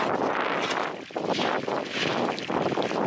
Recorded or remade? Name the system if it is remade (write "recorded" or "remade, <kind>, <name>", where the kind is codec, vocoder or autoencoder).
recorded